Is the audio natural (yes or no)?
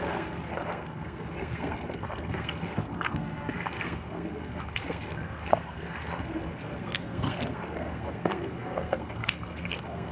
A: no